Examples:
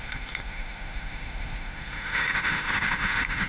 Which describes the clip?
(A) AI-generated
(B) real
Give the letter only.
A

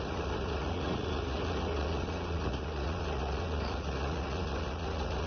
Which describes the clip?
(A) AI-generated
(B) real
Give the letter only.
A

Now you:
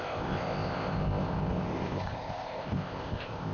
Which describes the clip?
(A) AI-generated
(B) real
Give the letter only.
A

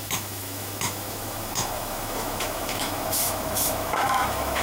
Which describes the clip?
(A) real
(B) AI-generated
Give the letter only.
B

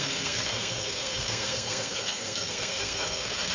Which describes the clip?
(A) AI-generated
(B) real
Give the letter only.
A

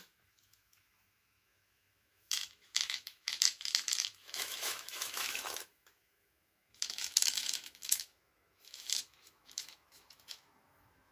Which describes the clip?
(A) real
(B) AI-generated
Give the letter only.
B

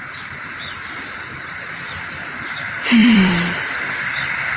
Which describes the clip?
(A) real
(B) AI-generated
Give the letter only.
B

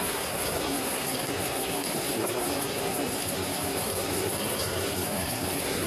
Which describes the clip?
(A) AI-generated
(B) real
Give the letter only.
A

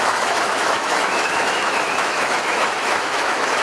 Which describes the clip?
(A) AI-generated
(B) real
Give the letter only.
A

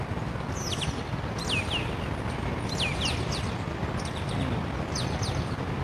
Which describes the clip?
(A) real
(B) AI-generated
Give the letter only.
A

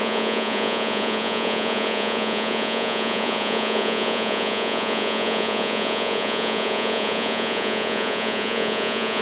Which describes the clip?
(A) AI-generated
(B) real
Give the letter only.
A